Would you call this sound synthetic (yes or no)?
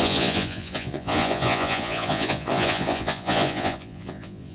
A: yes